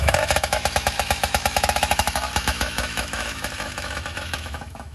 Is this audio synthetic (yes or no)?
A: yes